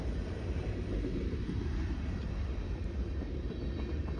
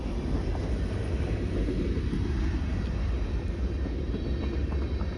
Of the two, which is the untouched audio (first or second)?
second